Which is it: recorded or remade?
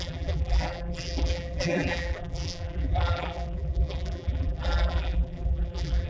remade